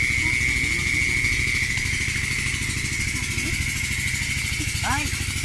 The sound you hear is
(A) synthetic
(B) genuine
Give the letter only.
B